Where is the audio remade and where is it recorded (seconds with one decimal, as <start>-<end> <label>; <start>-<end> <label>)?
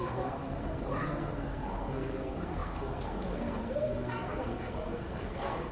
0.0-5.7 remade